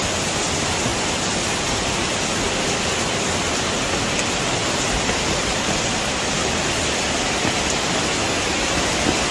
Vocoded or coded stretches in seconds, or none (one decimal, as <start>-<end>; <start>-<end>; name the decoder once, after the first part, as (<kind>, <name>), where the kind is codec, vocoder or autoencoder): none